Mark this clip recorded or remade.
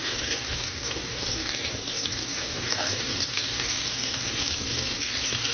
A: remade